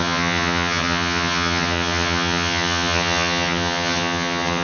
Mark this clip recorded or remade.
remade